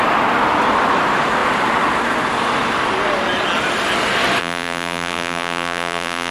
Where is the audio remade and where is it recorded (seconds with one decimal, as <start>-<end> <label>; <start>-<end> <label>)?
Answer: 0.0-4.4 recorded; 4.4-6.3 remade